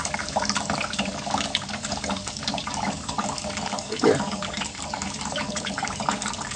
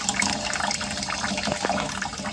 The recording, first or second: second